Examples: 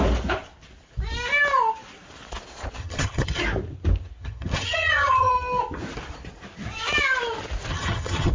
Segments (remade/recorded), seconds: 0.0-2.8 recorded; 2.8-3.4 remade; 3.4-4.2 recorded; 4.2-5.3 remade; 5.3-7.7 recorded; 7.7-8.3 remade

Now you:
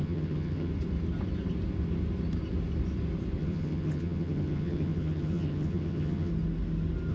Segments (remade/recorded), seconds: 0.0-0.7 remade; 0.7-3.4 recorded; 3.4-6.3 remade; 6.3-7.1 recorded

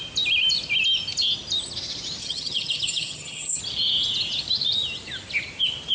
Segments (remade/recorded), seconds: 0.0-2.2 recorded; 2.2-3.6 remade; 3.6-5.9 recorded